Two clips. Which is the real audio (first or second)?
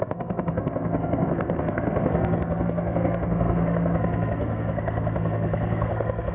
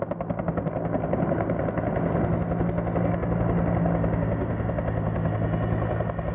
second